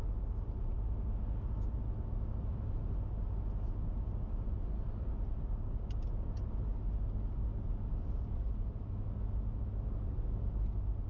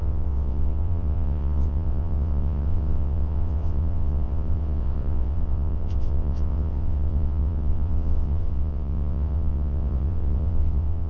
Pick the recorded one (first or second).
first